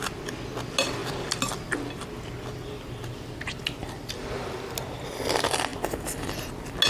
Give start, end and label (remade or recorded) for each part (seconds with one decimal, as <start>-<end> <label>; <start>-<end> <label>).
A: 0.0-6.9 recorded